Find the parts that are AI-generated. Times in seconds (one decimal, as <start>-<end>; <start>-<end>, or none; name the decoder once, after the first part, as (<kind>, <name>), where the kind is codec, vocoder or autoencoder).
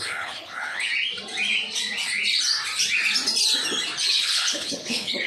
0.0-0.9 (codec, HILCodec); 4.1-5.3